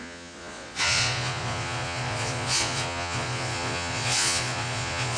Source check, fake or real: fake